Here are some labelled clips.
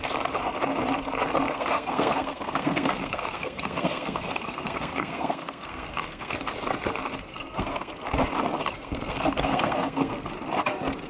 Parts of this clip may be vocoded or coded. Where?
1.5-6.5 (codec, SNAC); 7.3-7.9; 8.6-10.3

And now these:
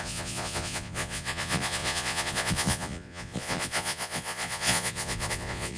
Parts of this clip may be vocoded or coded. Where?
0.0-5.8 (vocoder, Vocos)

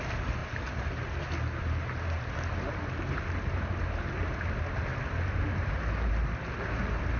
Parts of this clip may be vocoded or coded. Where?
none

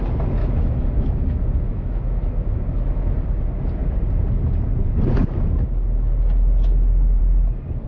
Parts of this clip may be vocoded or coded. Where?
0.4-3.4 (autoencoder, DAC-VAE)

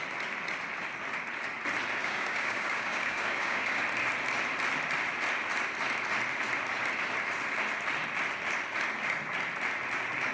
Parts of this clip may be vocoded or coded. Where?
2.0-3.8 (codec, DAC)

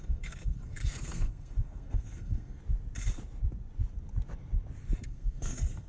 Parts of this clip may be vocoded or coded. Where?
0.0-2.6 (codec, SNAC); 5.0-5.9

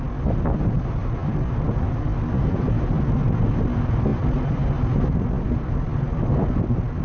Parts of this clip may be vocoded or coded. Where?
none

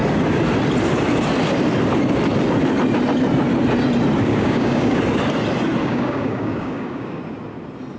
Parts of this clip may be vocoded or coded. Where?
4.3-5.0 (codec, DAC); 5.8-7.2